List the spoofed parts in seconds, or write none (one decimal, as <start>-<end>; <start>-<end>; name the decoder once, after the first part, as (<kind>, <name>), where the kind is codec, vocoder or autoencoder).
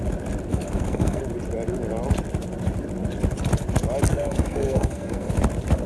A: 0.5-1.2 (codec, SNAC); 4.1-5.3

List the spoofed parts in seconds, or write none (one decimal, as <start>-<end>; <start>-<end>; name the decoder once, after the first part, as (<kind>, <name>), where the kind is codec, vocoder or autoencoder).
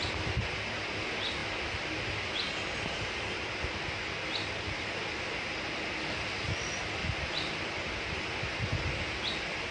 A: none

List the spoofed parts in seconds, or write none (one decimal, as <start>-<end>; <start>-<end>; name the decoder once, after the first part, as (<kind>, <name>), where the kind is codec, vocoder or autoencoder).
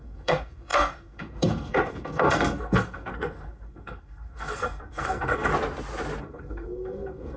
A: 0.0-5.5 (codec, SNAC); 6.2-7.4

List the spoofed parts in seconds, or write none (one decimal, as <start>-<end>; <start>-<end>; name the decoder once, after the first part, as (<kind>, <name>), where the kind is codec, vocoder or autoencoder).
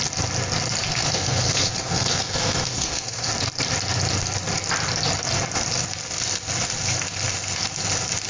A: 0.9-3.3 (codec, SNAC)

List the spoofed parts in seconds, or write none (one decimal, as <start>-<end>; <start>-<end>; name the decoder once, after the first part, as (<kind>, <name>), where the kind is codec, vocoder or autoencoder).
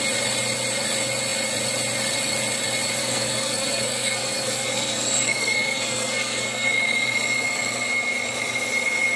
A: 3.0-6.7 (codec, SNAC)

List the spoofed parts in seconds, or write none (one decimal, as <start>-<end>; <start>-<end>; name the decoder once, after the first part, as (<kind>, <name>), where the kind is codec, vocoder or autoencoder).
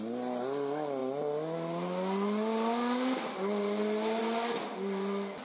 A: none